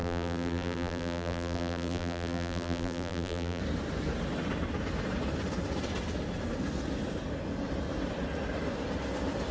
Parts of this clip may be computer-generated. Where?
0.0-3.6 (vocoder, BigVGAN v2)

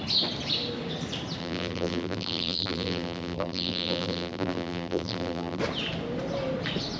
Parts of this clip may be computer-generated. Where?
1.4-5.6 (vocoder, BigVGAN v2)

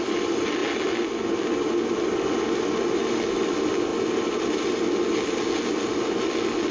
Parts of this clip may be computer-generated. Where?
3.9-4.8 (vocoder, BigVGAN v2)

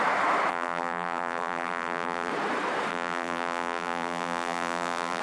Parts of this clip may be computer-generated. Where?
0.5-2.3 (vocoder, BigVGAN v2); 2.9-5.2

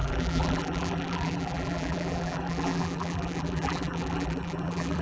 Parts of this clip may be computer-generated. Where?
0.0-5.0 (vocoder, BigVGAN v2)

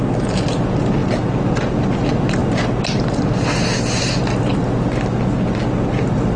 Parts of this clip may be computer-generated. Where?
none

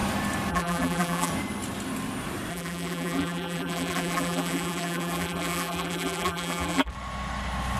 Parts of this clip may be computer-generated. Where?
0.5-1.3 (vocoder, BigVGAN v2); 2.5-6.9